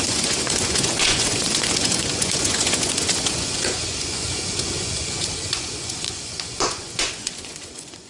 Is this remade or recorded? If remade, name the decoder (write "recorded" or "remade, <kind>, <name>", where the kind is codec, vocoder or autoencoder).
remade, vocoder, Vocos